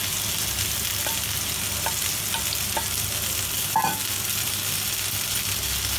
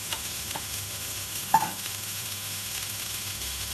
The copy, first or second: second